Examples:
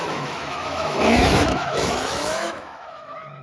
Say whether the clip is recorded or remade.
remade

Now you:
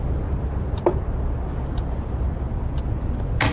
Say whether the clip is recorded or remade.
recorded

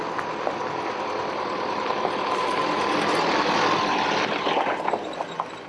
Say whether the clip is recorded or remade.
recorded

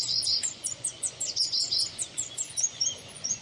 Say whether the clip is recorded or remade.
remade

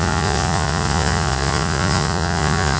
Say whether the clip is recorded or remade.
remade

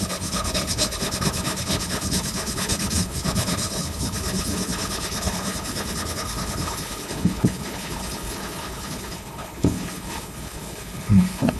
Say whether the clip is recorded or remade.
remade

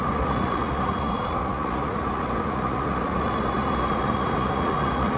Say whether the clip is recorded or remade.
remade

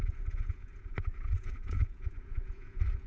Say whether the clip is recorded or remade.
remade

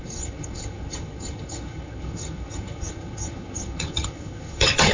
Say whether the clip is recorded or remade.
remade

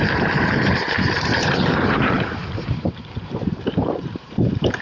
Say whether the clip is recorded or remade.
remade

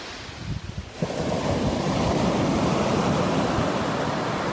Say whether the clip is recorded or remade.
recorded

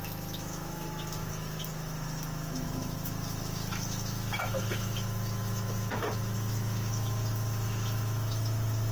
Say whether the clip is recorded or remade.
remade